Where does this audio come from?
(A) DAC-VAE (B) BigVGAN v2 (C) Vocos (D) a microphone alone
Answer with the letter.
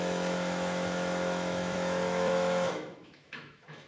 A